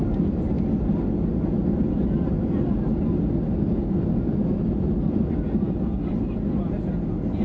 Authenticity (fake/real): real